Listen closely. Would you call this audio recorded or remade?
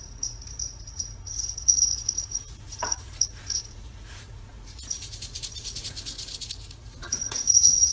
remade